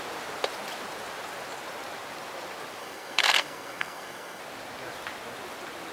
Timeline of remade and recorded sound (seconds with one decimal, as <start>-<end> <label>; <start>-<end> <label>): 0.0-2.8 recorded; 2.8-4.4 remade; 4.4-5.9 recorded